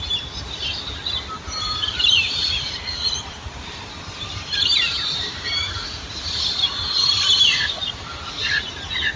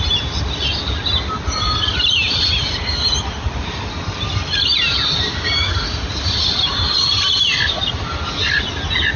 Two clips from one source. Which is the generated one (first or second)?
first